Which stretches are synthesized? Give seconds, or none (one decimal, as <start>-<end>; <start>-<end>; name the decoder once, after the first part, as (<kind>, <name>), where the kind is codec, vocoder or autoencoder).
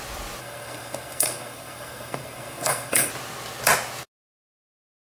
0.4-3.1 (codec, SNAC)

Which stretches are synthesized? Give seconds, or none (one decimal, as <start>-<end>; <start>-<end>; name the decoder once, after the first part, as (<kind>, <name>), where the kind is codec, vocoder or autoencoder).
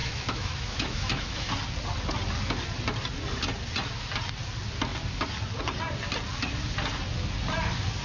0.0-1.5 (autoencoder, DAC-VAE)